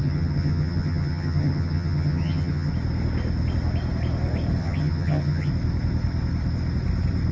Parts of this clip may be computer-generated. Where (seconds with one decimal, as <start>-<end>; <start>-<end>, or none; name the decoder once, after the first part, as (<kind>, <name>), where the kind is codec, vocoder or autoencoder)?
0.0-2.7 (vocoder, HiFi-GAN); 4.6-5.5